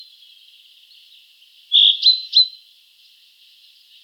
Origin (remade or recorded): recorded